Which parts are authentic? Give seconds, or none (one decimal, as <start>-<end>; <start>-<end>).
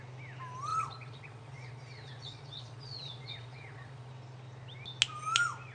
0.0-0.7; 4.1-5.7